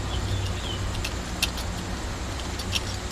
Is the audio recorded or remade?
recorded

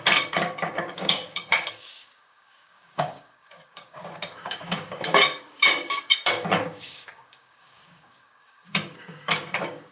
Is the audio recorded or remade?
remade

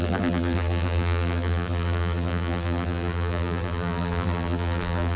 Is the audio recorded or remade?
remade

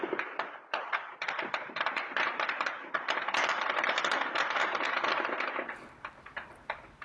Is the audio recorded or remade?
remade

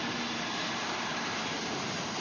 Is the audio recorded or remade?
remade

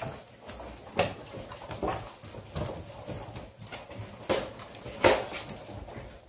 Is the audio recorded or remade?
recorded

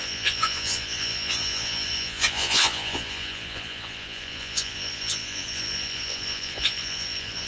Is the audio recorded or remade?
remade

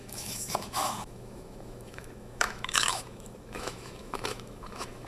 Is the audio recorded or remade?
remade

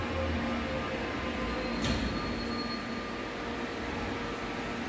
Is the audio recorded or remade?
recorded